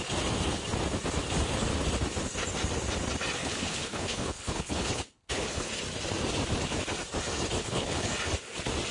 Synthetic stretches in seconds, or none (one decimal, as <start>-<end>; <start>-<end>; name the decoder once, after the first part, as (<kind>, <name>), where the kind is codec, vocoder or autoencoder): 3.4-5.7 (codec, HILCodec); 7.6-8.1